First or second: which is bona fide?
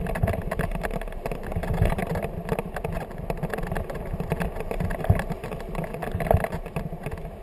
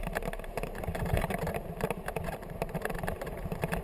first